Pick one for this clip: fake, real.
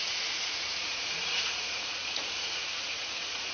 fake